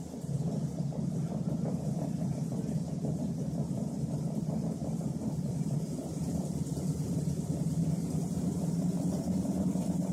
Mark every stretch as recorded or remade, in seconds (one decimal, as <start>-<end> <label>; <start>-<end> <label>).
0.0-10.1 remade